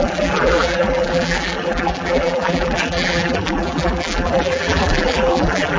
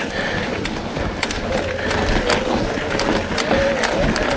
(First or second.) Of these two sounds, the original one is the second